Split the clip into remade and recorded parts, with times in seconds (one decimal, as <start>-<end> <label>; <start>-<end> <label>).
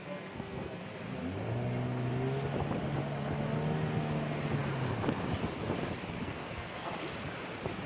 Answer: 0.0-0.8 remade; 0.8-6.2 recorded; 6.2-6.9 remade; 6.9-7.9 recorded